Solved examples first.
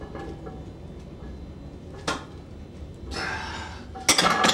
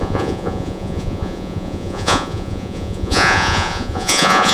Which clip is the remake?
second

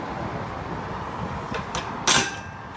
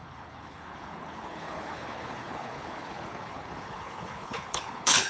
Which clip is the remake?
second